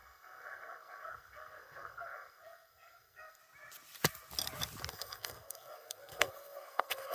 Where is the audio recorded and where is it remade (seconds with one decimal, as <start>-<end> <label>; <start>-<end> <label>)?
0.0-3.4 remade; 3.4-4.9 recorded; 4.9-7.1 remade